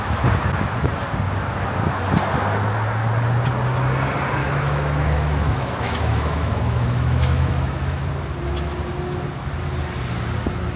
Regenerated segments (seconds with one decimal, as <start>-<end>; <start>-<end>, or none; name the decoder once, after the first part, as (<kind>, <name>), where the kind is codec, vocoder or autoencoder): 4.4-8.1 (autoencoder, DAC-VAE)